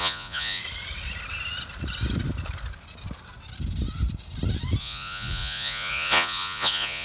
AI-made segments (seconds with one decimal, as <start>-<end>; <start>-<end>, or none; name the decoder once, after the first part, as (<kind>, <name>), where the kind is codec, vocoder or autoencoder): 0.0-0.6 (vocoder, Vocos); 4.8-7.0